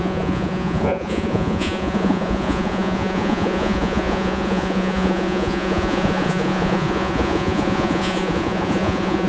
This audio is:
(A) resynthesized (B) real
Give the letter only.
A